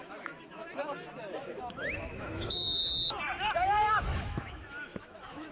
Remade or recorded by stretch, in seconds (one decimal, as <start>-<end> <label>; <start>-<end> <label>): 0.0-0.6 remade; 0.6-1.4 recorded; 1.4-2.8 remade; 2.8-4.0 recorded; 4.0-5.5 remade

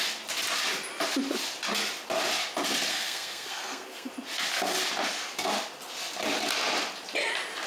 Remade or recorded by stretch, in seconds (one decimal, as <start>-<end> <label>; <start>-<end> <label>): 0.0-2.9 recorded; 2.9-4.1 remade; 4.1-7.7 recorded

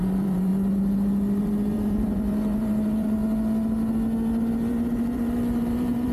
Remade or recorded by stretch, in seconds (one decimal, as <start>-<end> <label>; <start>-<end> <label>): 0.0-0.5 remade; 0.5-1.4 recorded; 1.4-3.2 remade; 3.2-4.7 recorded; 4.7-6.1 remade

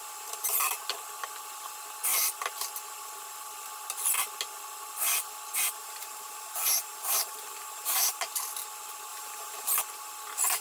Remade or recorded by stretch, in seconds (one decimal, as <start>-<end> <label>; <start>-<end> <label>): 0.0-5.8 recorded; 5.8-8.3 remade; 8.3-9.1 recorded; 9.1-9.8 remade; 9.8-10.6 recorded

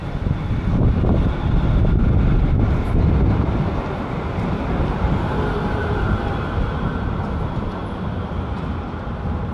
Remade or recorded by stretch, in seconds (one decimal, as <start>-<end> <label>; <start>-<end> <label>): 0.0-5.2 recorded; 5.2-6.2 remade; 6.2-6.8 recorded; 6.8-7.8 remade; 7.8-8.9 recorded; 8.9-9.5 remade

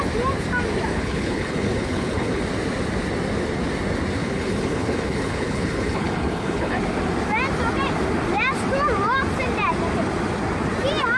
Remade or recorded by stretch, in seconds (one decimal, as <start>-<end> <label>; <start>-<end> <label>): 0.0-0.9 recorded; 0.9-2.4 remade; 2.4-4.2 recorded; 4.2-6.8 remade; 6.8-11.2 recorded

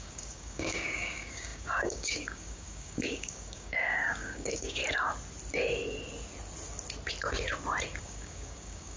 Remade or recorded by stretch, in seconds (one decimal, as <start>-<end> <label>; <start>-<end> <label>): 0.0-4.8 remade; 4.8-8.0 recorded; 8.0-9.0 remade

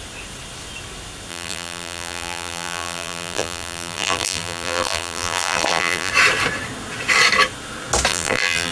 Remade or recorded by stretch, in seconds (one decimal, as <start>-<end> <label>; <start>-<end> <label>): 0.0-1.3 recorded; 1.3-6.1 remade; 6.1-8.1 recorded; 8.1-8.7 remade